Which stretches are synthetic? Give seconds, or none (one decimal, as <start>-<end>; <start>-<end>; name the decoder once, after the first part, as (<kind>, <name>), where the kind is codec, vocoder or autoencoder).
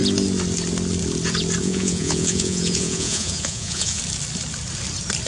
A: 1.6-4.0 (vocoder, Vocos)